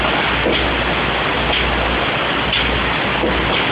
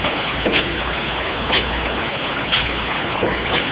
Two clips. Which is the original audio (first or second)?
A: first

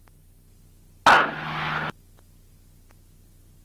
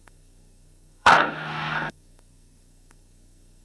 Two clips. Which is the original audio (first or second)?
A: first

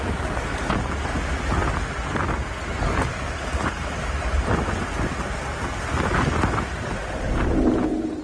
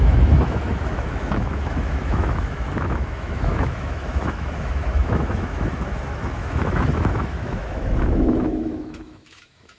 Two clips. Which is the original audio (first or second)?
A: first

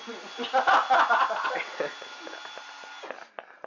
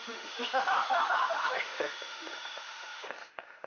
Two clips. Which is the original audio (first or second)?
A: first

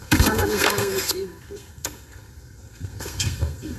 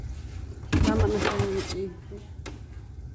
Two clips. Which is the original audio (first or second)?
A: second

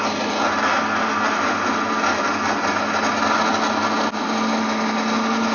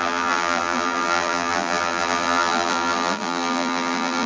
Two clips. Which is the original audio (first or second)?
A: first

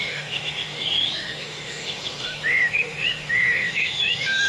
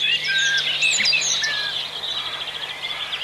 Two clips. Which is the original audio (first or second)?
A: second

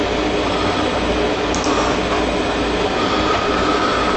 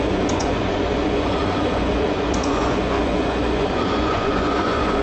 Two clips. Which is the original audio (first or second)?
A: first